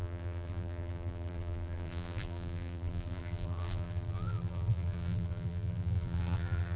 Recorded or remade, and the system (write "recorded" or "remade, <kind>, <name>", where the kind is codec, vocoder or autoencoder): remade, vocoder, BigVGAN v2